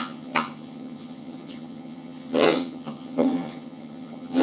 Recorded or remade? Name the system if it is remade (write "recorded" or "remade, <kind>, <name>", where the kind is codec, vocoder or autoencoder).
remade, vocoder, HiFi-GAN